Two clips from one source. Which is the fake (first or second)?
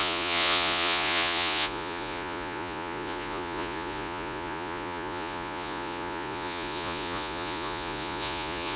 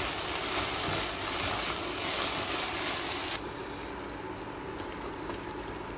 first